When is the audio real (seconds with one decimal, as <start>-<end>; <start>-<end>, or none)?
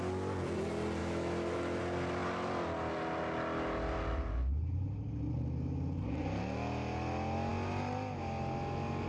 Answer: 0.0-1.0; 1.8-9.1